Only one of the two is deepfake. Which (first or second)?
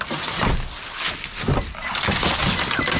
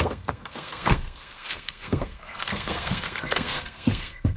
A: second